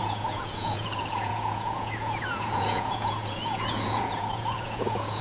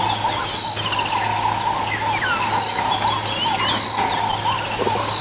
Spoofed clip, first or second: first